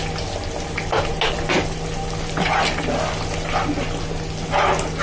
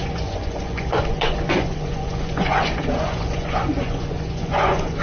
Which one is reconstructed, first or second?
second